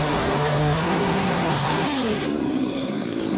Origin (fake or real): fake